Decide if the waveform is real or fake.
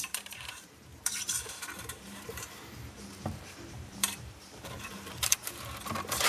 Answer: fake